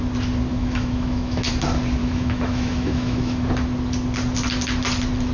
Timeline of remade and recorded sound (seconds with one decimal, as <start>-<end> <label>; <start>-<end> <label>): 0.0-0.5 recorded; 0.5-1.5 remade; 1.5-2.0 recorded; 2.0-3.5 remade; 3.5-5.3 recorded